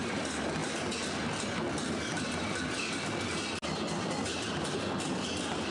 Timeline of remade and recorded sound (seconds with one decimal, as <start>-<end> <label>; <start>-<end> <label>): 0.0-5.7 recorded